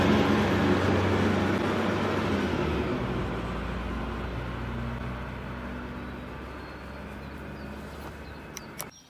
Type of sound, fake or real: real